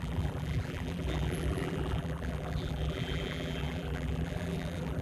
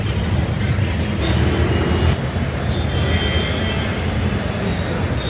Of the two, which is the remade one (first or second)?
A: first